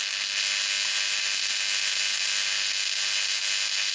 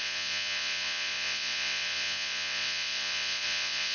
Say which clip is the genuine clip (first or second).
first